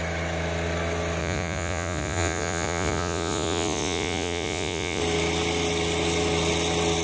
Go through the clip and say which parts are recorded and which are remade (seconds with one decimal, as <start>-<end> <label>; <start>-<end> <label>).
0.0-1.2 recorded; 1.2-5.0 remade; 5.0-7.0 recorded